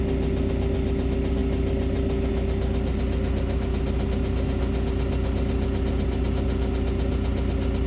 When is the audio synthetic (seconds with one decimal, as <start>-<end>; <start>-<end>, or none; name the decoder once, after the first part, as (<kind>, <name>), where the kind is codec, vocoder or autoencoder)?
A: none